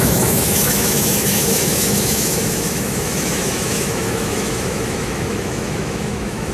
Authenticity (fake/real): fake